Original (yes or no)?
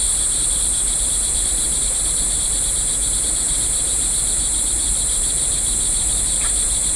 no